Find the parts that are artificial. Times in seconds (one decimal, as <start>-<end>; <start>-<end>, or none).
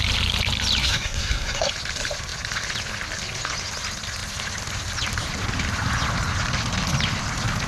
0.8-1.7